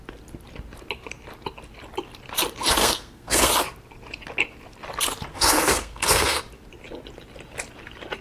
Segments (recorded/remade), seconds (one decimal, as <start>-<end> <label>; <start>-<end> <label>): 0.0-2.8 recorded; 2.8-3.5 remade; 3.5-5.3 recorded; 5.3-6.4 remade; 6.4-8.2 recorded